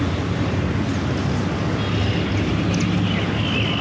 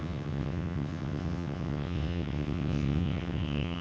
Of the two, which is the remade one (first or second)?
second